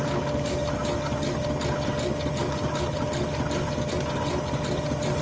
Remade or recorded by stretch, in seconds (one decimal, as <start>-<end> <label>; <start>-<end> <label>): 0.0-5.2 recorded